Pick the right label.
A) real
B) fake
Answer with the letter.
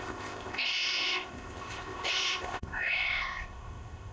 B